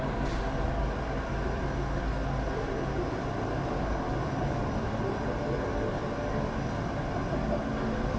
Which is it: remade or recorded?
recorded